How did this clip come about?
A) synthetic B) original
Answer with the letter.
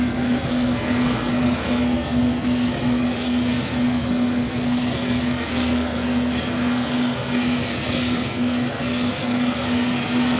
A